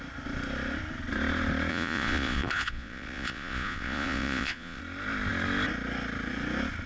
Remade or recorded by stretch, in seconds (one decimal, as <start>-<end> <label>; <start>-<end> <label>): 0.0-1.7 recorded; 1.7-4.8 remade; 4.8-6.9 recorded